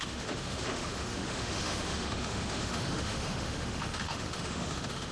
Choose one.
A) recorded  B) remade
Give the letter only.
B